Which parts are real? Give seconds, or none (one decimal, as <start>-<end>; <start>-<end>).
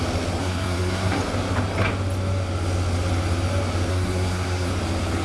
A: 0.0-0.4; 1.2-3.9; 4.7-5.2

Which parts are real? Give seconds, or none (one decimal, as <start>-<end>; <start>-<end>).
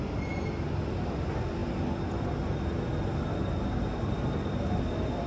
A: 0.0-5.3